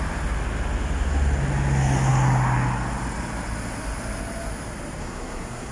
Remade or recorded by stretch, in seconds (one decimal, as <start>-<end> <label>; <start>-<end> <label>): 0.0-5.0 recorded; 5.0-5.7 remade

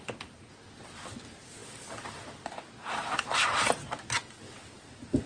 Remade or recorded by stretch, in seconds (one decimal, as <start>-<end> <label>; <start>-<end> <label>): 0.0-5.3 recorded

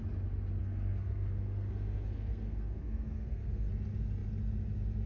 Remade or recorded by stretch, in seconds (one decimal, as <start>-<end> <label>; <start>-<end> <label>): 0.0-0.6 recorded; 0.6-3.7 remade; 3.7-5.1 recorded

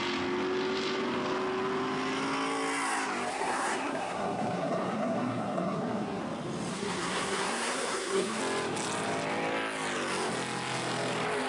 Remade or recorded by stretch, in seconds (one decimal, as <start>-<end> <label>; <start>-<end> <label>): 0.0-3.3 recorded; 3.3-6.2 remade; 6.2-6.7 recorded; 6.7-8.4 remade; 8.4-11.5 recorded

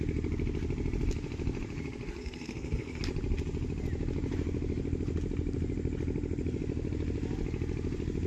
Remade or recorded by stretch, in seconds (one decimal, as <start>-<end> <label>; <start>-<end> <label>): 0.0-2.2 recorded; 2.2-3.0 remade; 3.0-8.3 recorded

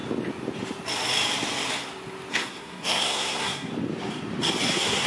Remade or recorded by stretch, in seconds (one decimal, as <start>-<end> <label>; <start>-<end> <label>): 0.0-2.3 recorded; 2.3-3.7 remade; 3.7-4.6 recorded; 4.6-5.1 remade